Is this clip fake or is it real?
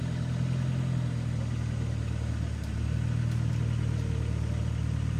real